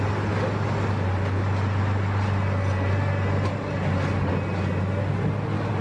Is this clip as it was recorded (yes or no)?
yes